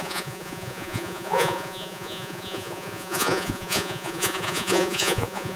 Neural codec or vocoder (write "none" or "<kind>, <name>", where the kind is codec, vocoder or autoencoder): vocoder, Vocos